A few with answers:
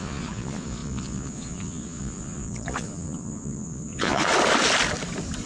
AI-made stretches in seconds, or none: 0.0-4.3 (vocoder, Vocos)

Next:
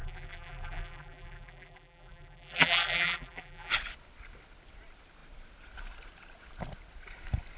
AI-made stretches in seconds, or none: 0.0-3.7 (vocoder, BigVGAN v2)

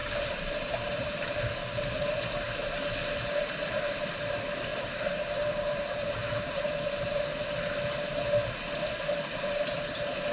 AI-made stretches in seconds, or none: 0.0-1.4 (vocoder, BigVGAN v2); 4.7-7.2

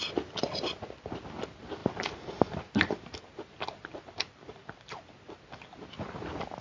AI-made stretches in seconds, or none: none

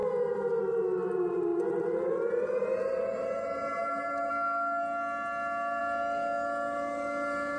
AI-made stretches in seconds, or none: none

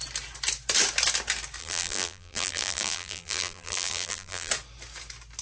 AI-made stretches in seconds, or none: 1.6-4.5 (vocoder, BigVGAN v2)